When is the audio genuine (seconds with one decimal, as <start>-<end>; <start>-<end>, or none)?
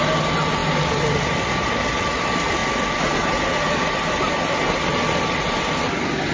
0.0-6.3